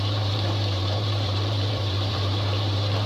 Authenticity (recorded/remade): remade